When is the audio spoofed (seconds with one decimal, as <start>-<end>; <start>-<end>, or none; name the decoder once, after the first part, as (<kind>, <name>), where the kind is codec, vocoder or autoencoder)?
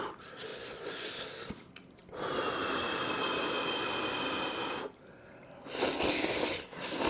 0.5-1.1 (vocoder, Vocos)